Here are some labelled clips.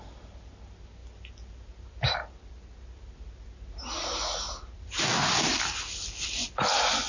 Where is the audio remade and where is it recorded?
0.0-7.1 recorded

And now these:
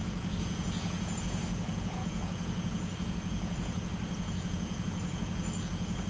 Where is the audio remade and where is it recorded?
0.0-6.1 remade

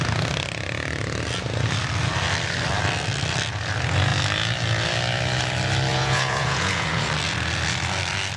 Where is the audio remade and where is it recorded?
0.0-5.9 recorded; 5.9-7.1 remade; 7.1-8.4 recorded

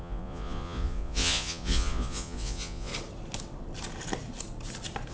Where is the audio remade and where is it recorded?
0.0-2.9 remade; 2.9-5.1 recorded

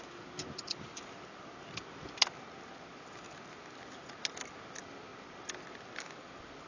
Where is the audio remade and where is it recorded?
0.0-6.7 recorded

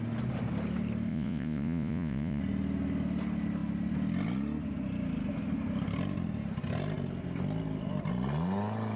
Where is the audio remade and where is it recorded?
0.0-1.1 recorded; 1.1-2.4 remade; 2.4-9.0 recorded